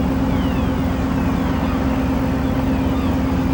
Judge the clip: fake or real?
real